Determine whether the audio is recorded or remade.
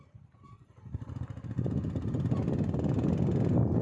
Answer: recorded